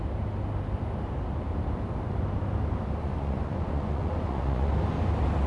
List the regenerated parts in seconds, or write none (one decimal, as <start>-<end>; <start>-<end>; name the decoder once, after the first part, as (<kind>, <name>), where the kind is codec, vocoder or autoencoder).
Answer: 3.0-4.7 (vocoder, Vocos)